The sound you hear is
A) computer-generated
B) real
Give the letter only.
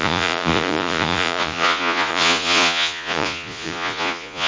A